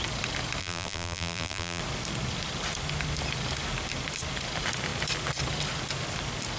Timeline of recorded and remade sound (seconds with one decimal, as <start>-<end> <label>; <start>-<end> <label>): 0.0-0.6 recorded; 0.6-1.8 remade; 1.8-6.6 recorded